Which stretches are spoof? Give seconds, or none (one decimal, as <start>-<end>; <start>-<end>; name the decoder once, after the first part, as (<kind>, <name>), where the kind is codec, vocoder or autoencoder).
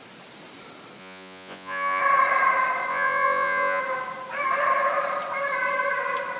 1.0-2.0 (vocoder, Vocos); 2.9-3.8